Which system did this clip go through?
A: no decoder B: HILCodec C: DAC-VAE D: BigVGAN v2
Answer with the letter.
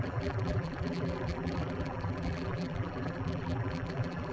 D